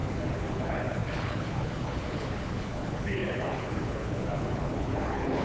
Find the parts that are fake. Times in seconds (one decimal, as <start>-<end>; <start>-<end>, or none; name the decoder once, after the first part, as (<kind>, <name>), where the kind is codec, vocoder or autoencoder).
0.0-5.4 (codec, HILCodec)